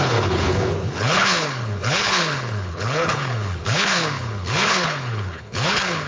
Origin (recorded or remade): remade